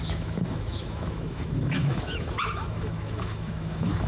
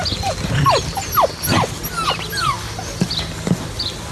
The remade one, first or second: first